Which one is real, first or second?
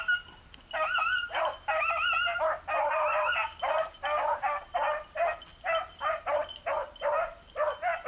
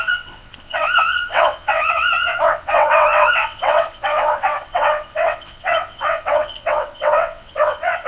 first